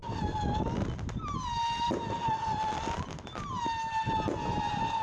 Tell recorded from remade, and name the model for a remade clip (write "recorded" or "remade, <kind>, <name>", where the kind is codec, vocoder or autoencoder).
recorded